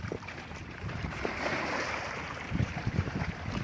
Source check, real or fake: fake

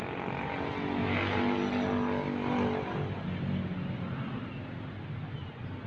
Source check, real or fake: real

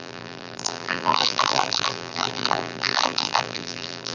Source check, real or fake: fake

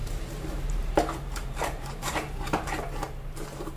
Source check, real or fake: fake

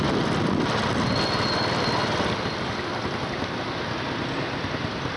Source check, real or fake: real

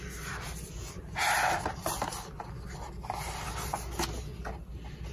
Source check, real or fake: real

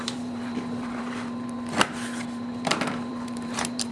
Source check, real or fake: fake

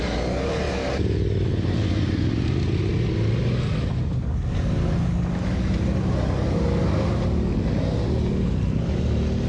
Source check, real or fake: real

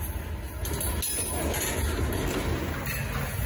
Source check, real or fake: real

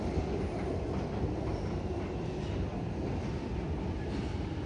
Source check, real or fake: real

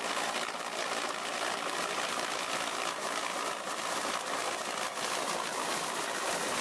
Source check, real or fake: real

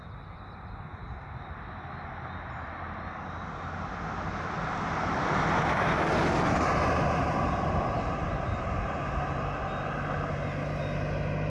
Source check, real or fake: real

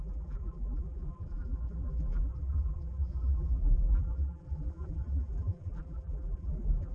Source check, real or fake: fake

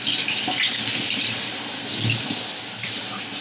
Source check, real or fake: real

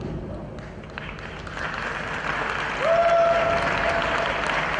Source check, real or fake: real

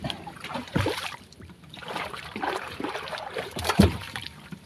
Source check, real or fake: fake